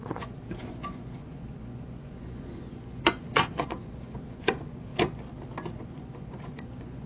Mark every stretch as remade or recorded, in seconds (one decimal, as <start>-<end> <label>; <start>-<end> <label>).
0.0-4.9 remade; 4.9-5.8 recorded; 5.8-7.1 remade